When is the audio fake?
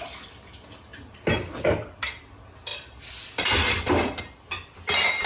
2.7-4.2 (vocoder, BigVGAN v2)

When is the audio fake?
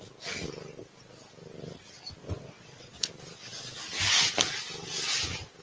2.2-3.1 (vocoder, WaveNeXt)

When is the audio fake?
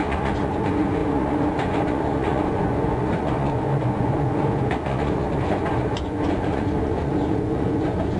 0.0-8.2 (vocoder, Vocos)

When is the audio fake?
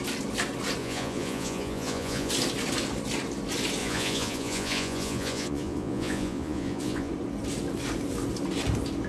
0.8-2.3 (vocoder, Vocos); 3.8-7.1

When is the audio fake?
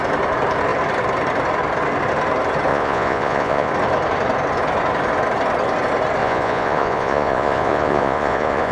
2.7-3.7 (vocoder, Vocos); 6.2-8.7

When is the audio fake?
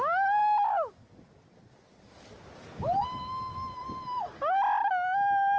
none